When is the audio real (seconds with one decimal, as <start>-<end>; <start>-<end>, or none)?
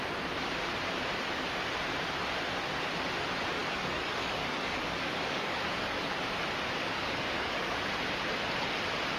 0.0-3.6; 6.0-6.8; 7.8-9.2